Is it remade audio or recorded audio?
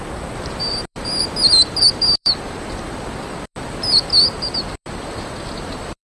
remade